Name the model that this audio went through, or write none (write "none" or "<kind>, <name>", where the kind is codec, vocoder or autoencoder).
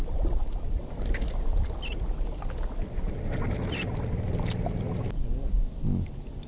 none